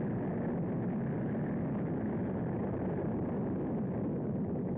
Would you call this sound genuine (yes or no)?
yes